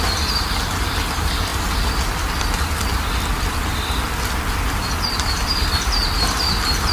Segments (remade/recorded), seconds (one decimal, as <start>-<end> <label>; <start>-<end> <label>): 0.0-6.9 recorded